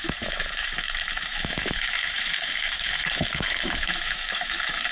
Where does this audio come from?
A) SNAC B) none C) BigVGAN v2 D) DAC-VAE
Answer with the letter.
D